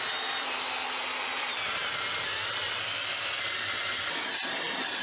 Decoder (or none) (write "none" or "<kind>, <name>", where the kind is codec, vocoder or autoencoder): none